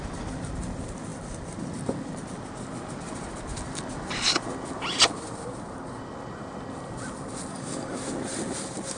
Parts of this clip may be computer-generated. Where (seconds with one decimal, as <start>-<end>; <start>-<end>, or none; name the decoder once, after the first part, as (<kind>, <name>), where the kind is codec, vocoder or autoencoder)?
7.5-8.0 (codec, DAC)